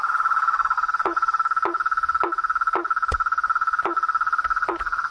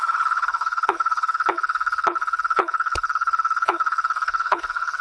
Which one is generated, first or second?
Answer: second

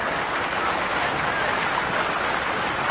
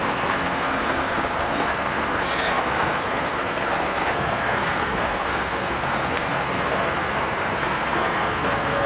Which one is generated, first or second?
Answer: second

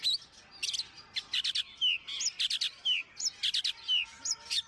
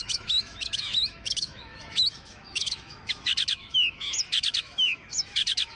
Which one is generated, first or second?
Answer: second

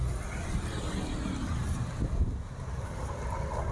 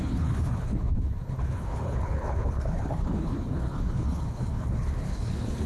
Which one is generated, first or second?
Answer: second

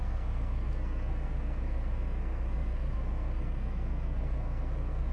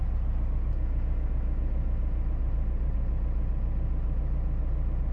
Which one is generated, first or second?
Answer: first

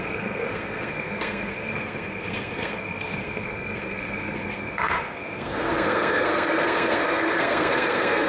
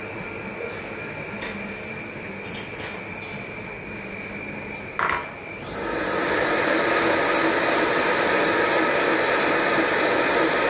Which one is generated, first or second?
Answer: first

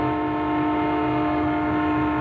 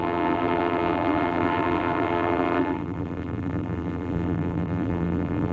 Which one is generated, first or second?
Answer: second